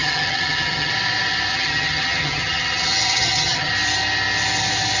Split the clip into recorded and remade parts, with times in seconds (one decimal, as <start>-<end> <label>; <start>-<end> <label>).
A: 0.0-0.9 remade; 0.9-1.5 recorded; 1.5-3.7 remade; 3.7-5.0 recorded